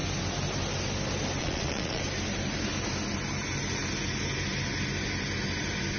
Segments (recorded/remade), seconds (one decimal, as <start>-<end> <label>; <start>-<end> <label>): 0.0-1.4 recorded; 1.4-2.0 remade; 2.0-6.0 recorded